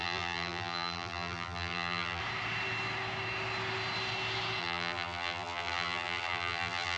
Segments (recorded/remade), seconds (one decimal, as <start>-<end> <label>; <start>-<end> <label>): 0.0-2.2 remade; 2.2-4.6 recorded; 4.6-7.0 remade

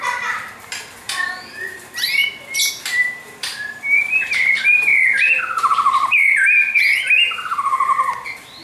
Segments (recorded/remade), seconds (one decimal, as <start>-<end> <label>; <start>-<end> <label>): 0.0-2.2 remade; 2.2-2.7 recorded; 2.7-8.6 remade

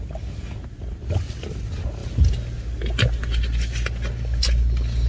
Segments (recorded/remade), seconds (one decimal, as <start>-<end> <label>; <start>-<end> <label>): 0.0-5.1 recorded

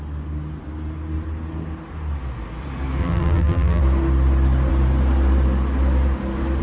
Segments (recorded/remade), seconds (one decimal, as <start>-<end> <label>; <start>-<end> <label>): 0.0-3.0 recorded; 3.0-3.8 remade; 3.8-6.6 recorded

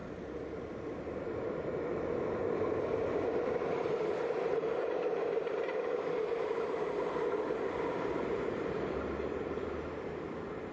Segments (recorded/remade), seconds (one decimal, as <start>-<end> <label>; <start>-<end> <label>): 0.0-7.9 recorded; 7.9-9.9 remade; 9.9-10.7 recorded

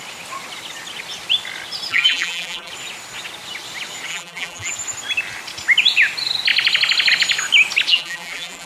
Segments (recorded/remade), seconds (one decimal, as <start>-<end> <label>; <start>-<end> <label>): 0.0-1.9 recorded; 1.9-2.7 remade; 2.7-4.1 recorded; 4.1-4.7 remade; 4.7-7.9 recorded; 7.9-8.7 remade